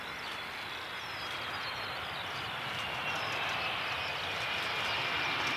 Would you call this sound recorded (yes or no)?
yes